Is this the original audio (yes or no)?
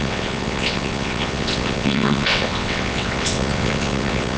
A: no